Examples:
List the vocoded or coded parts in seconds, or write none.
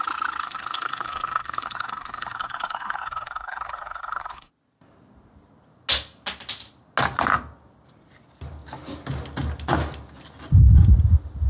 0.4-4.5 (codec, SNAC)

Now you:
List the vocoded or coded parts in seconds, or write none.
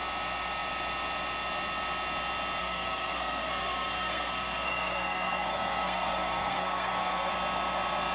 2.6-7.3 (codec, SNAC)